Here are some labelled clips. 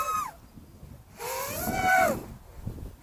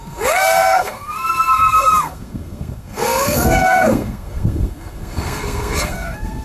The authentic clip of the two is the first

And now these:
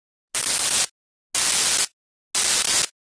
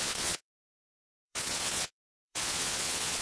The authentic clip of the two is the first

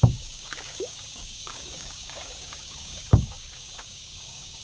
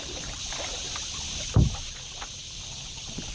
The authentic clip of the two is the second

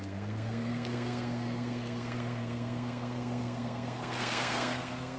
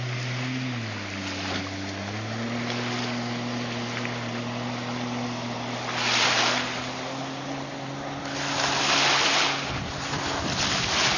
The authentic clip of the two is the second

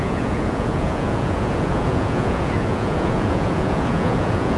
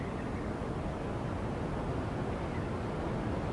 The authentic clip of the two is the second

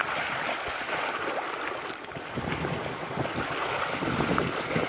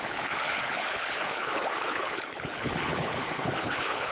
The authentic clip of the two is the first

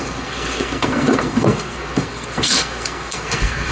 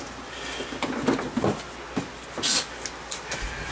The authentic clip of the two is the second